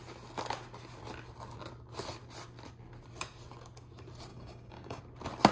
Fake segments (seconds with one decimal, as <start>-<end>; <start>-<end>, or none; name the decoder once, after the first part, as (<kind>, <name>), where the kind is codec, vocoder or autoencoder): 4.3-5.0 (codec, DAC)